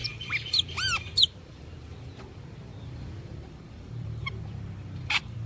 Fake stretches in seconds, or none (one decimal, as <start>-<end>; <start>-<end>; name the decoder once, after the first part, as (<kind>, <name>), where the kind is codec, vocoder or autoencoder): 0.0-5.5 (vocoder, BigVGAN v2)